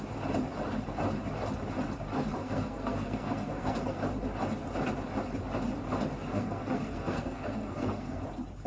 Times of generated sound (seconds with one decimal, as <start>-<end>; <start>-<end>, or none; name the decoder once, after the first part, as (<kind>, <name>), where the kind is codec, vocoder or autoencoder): 2.4-4.0 (codec, SNAC); 6.3-8.2